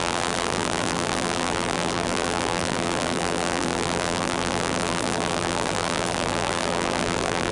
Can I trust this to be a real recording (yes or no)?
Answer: no